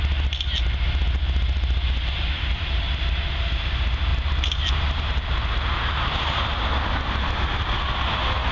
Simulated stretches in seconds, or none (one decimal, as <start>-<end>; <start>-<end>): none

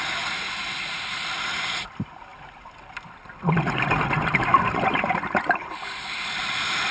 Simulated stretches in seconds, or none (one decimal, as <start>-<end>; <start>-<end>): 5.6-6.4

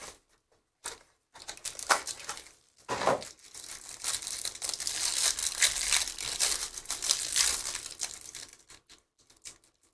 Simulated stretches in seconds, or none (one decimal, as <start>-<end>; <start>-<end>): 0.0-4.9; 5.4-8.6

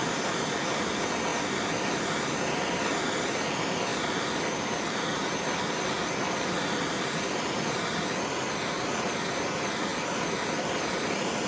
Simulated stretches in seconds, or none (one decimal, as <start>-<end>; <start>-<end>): none

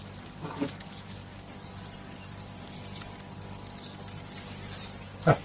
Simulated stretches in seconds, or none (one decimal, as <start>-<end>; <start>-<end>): 1.2-2.7

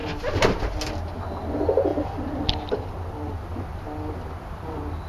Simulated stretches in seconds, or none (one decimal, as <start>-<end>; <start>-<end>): 1.9-3.4

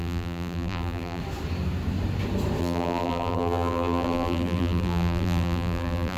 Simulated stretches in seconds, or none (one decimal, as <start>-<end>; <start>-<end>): 0.0-1.2; 2.6-6.2

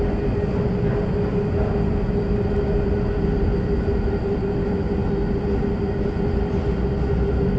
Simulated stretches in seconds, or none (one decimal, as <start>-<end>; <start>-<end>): none